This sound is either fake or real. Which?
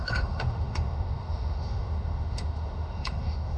fake